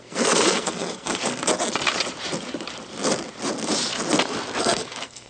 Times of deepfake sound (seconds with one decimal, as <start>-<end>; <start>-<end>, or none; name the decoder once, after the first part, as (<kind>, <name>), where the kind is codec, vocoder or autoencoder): 0.0-1.4 (codec, SNAC); 4.6-5.3